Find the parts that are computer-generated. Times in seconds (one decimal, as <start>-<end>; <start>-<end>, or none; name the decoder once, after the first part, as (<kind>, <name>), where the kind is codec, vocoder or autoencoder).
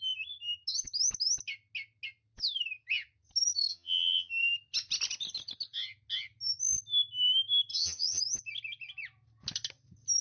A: 3.7-4.3 (vocoder, HiFi-GAN); 7.7-8.2